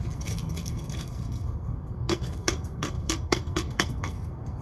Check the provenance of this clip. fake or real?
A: fake